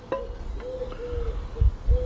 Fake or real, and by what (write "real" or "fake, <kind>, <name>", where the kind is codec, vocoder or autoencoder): real